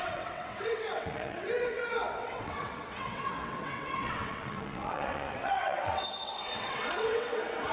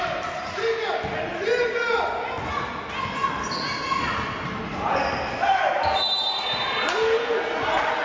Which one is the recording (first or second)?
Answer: second